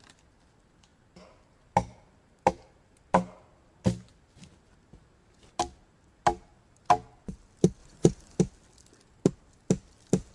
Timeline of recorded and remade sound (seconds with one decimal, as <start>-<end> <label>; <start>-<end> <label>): 0.0-7.8 recorded; 7.8-8.4 remade; 8.4-10.3 recorded